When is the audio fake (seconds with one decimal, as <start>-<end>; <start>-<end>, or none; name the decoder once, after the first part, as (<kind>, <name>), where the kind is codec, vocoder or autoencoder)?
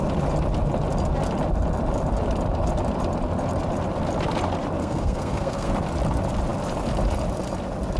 4.8-5.7 (codec, SNAC)